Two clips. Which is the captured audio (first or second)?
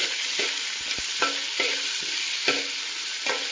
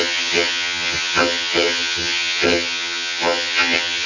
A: first